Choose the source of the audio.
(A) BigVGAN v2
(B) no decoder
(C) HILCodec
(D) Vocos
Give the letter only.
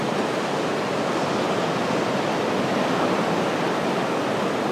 B